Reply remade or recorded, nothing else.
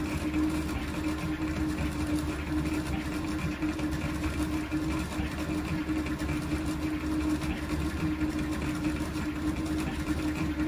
recorded